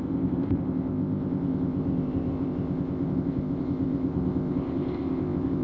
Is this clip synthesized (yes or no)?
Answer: yes